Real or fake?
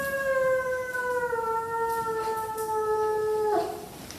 real